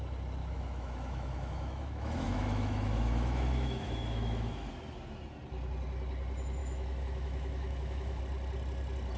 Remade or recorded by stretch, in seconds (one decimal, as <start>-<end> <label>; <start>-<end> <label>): 0.0-0.4 recorded; 0.4-4.7 remade; 4.7-6.6 recorded; 6.6-8.2 remade; 8.2-9.2 recorded